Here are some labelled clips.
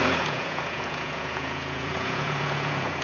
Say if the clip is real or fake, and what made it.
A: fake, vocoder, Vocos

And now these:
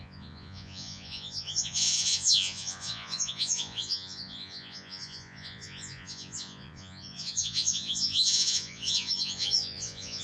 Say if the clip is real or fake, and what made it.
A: fake, vocoder, Vocos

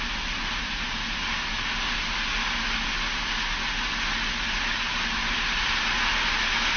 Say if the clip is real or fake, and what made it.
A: real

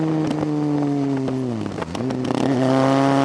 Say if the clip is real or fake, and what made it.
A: real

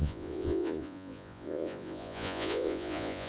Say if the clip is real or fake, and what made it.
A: fake, vocoder, Vocos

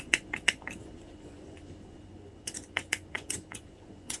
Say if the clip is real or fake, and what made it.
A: fake, vocoder, Vocos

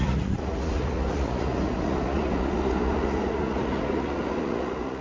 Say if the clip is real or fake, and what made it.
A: fake, vocoder, Vocos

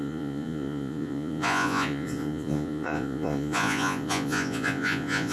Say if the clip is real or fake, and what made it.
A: fake, vocoder, Vocos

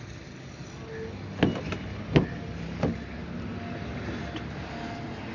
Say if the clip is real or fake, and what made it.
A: real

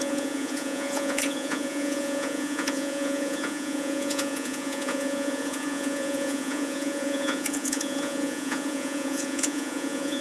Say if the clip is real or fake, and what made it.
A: fake, vocoder, Vocos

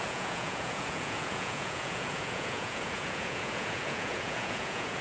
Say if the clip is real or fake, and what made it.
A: fake, vocoder, Vocos